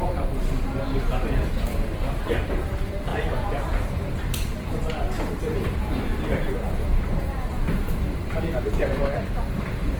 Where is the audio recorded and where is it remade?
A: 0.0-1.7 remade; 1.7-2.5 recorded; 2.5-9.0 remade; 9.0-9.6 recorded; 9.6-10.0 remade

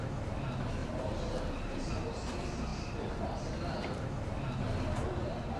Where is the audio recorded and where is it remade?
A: 0.0-0.8 recorded; 0.8-1.9 remade; 1.9-2.7 recorded; 2.7-3.4 remade; 3.4-5.6 recorded

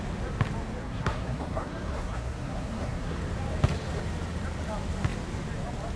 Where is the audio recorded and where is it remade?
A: 0.0-0.8 recorded; 0.8-3.2 remade; 3.2-6.0 recorded

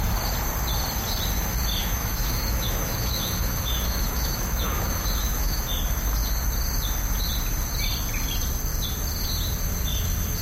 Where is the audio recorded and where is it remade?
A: 0.0-1.8 recorded; 1.8-5.7 remade; 5.7-10.4 recorded

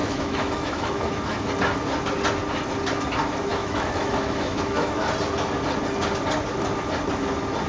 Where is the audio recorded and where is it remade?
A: 0.0-1.5 remade; 1.5-3.5 recorded; 3.5-5.0 remade; 5.0-7.7 recorded

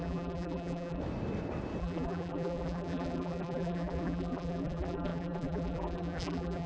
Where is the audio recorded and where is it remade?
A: 0.0-1.0 remade; 1.0-1.8 recorded; 1.8-6.7 remade

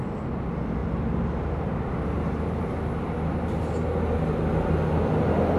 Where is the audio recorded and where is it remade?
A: 0.0-5.6 recorded

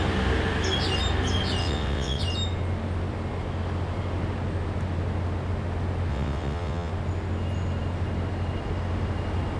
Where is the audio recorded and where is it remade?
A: 0.0-1.6 recorded; 1.6-2.2 remade; 2.2-6.1 recorded; 6.1-6.9 remade; 6.9-9.6 recorded